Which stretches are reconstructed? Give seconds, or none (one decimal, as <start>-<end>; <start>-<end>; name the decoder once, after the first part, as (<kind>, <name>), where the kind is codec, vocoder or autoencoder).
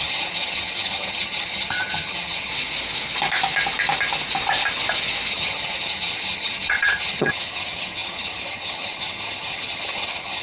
0.0-2.5 (vocoder, HiFi-GAN); 5.3-10.4